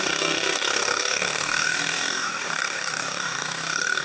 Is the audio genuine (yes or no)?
no